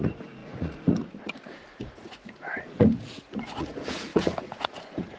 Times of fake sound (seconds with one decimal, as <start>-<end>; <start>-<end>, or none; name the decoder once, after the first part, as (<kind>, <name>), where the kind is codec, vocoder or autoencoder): 0.0-5.2 (vocoder, Vocos)